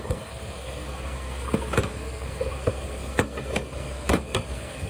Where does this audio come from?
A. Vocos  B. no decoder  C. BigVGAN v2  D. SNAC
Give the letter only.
D